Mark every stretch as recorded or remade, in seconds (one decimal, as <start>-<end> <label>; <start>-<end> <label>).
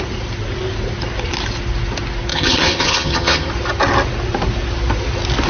0.0-2.3 recorded; 2.3-3.5 remade; 3.5-5.5 recorded